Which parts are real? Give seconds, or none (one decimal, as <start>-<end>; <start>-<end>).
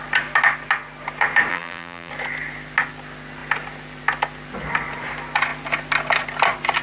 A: 0.0-1.5; 2.1-6.8